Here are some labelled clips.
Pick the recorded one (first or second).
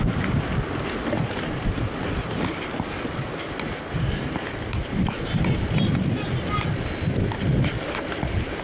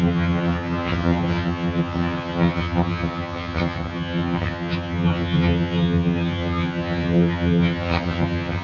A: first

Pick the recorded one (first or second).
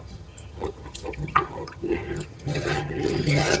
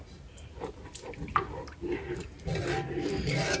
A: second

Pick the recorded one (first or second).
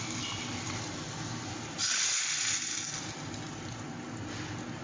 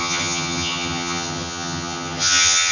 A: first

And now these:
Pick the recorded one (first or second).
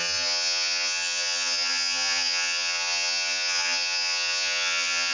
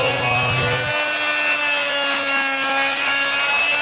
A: second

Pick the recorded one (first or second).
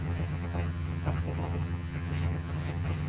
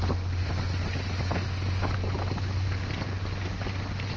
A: second